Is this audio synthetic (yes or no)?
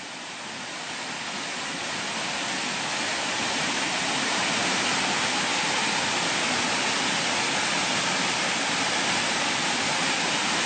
no